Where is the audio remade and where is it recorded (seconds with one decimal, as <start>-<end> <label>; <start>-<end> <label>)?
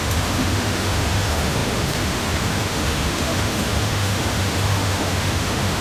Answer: 0.0-5.8 remade